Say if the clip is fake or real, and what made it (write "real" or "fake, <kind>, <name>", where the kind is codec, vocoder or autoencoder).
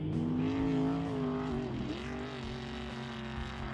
real